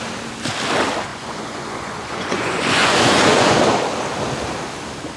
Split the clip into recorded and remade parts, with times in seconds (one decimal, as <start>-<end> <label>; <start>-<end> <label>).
0.0-1.1 recorded; 1.1-3.6 remade; 3.6-5.2 recorded

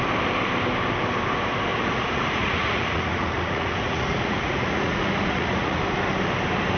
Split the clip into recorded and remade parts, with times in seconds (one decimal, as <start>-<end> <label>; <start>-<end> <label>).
0.0-1.7 recorded; 1.7-5.8 remade; 5.8-6.8 recorded